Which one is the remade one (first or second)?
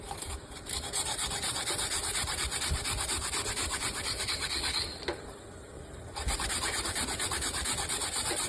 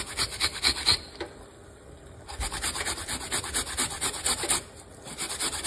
first